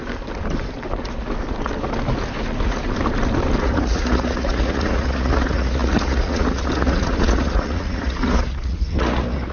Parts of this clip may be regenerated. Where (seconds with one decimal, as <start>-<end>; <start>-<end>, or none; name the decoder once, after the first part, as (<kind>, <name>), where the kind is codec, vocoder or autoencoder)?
3.6-9.5 (vocoder, Vocos)